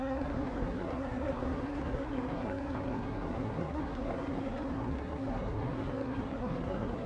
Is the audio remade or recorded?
remade